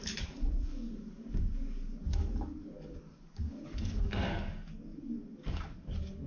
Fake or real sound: fake